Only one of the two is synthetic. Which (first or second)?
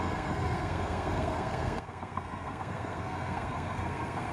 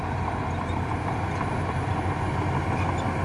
first